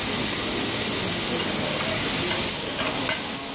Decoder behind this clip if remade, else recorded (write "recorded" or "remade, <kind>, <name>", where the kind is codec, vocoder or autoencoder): recorded